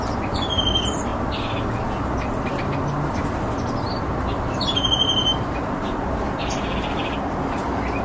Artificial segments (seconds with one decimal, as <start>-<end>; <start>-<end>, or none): 0.0-1.1; 4.0-7.0; 7.6-8.0